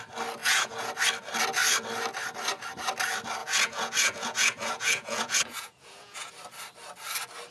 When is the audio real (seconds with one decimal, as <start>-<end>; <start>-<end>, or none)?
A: 0.0-0.4; 0.9-3.4; 6.3-7.5